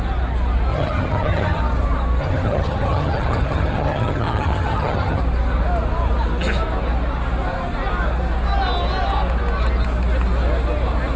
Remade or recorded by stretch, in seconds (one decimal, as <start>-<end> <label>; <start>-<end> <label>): 0.0-0.7 recorded; 0.7-1.6 remade; 1.6-2.2 recorded; 2.2-5.2 remade; 5.2-11.2 recorded